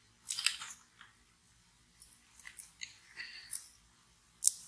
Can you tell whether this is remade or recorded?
recorded